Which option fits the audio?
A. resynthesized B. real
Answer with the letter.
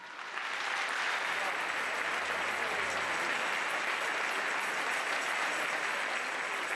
B